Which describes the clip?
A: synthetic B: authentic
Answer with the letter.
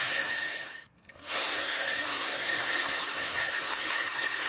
A